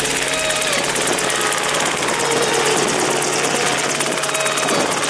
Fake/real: real